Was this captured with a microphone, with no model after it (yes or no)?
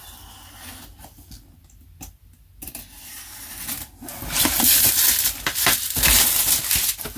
yes